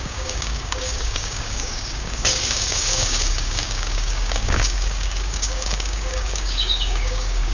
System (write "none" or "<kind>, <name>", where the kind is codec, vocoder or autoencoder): codec, DAC